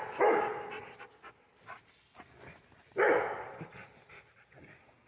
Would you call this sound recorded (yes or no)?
yes